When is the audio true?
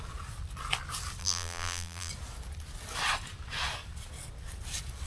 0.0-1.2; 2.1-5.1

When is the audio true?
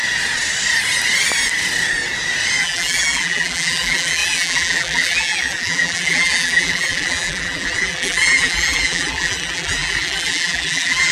0.0-2.6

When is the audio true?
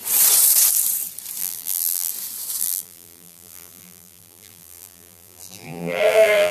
0.0-1.4; 2.1-2.6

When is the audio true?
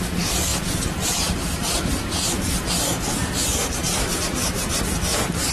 0.0-0.5; 2.6-3.6; 4.8-5.5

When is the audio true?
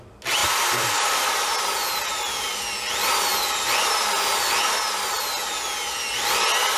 0.0-0.4; 1.6-6.8